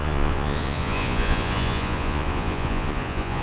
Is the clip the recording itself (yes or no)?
no